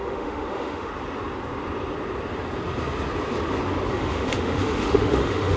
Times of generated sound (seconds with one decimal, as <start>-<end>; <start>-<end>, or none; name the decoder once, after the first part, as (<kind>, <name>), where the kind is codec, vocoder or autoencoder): 0.0-0.9 (autoencoder, DAC-VAE); 3.9-5.6